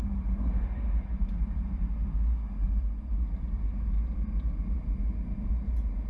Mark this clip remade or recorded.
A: remade